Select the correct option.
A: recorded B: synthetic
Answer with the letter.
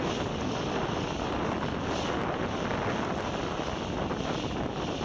A